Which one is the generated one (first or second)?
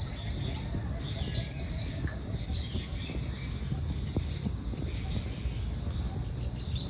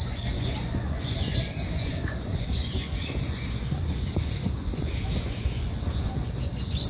second